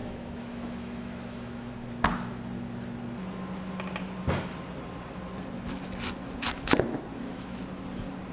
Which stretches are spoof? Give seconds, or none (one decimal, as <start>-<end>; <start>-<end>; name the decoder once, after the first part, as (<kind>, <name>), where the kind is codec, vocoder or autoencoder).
0.0-1.7 (autoencoder, DAC-VAE); 7.1-7.6